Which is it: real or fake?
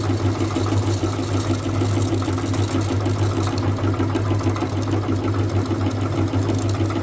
real